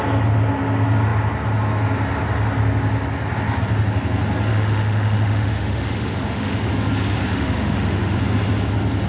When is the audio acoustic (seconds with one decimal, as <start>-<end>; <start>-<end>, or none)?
0.0-4.5; 6.7-7.3; 8.2-9.1